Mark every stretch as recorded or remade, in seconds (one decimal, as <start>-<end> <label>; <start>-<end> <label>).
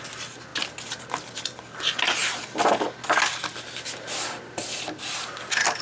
0.0-5.8 recorded